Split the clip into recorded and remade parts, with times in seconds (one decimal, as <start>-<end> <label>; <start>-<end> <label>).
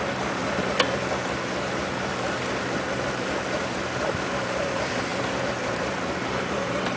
0.0-0.4 remade; 0.4-4.4 recorded; 4.4-7.0 remade